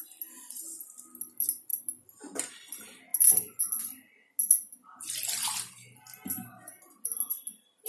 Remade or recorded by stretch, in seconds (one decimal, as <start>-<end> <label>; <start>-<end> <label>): 0.0-7.9 recorded